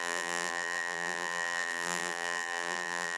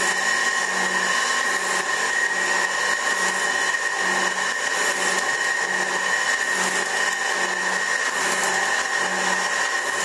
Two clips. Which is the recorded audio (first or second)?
second